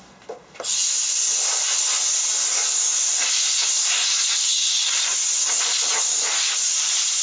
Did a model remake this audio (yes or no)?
no